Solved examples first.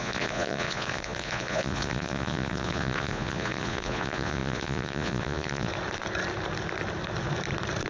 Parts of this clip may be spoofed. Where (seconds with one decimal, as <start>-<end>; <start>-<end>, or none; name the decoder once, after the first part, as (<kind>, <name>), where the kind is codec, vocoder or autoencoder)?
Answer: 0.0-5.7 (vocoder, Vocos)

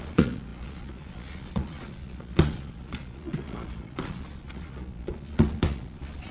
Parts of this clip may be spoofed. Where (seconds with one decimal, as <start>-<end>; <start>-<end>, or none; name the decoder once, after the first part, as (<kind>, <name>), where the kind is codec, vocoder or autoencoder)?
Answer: 0.0-6.3 (vocoder, Vocos)

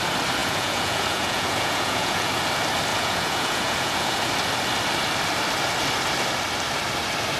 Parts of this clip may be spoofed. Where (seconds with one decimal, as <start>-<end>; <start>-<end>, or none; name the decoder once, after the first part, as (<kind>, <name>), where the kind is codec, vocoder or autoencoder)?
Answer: 0.4-2.3 (vocoder, Vocos); 2.9-4.3

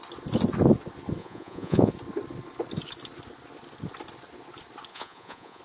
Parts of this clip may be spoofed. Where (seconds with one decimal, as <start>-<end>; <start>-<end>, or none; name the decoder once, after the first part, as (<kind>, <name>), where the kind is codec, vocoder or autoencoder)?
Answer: 1.2-1.9 (vocoder, Vocos); 4.9-5.6